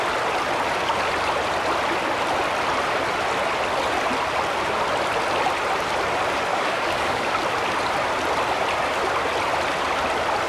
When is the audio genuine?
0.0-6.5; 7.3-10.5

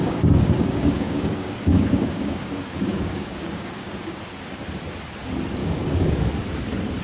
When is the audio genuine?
4.2-5.6; 6.2-7.0

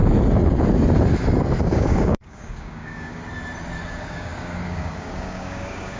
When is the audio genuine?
0.0-1.6; 3.2-3.9

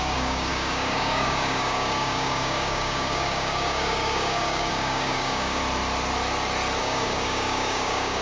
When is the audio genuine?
5.6-6.8

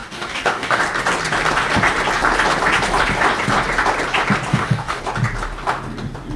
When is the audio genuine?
0.8-4.5; 5.0-6.4

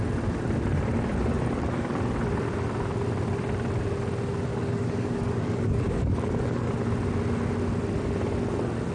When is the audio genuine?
0.0-1.1; 2.0-4.5; 6.7-8.9

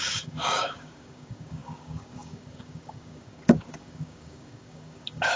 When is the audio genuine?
none